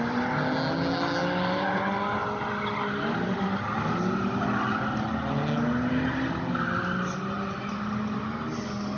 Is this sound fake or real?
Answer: real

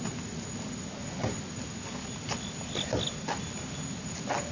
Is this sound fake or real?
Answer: real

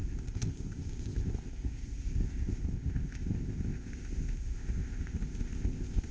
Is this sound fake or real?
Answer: fake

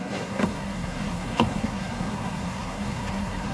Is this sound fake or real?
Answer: fake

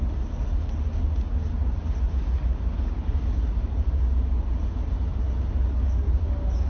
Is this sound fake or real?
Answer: real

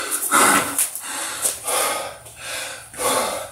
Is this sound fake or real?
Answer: real